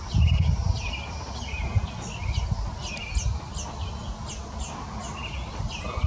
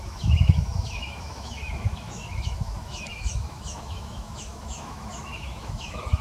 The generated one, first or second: second